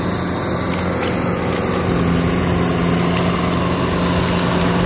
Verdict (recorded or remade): recorded